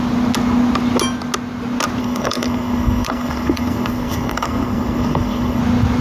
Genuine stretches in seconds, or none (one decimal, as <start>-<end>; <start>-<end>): 0.0-2.0; 5.6-6.0